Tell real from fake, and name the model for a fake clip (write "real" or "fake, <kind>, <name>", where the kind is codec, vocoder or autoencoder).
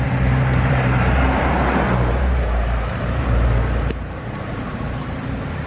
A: fake, vocoder, BigVGAN v2